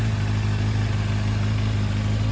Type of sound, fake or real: real